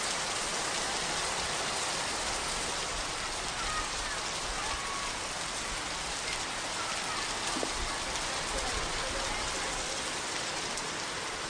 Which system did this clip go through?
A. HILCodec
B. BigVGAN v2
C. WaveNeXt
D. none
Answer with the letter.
D